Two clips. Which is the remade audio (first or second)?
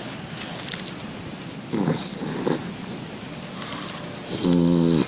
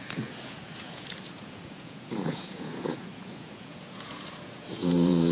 second